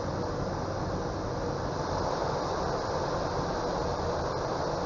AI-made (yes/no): no